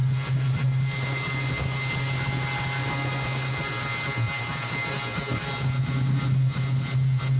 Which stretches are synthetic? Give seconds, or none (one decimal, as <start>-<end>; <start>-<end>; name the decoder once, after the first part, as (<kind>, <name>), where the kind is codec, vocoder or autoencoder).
none